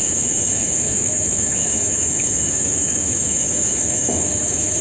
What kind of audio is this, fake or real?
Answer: fake